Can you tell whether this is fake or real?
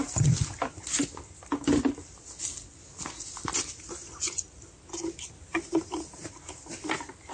real